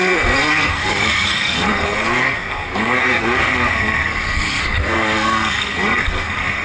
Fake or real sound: fake